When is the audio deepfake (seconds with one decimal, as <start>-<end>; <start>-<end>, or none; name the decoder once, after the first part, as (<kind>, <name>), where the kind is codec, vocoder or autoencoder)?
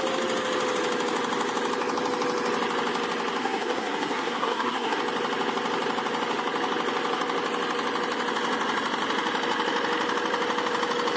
3.4-5.0 (codec, SNAC)